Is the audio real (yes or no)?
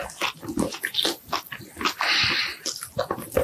yes